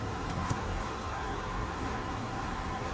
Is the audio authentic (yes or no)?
no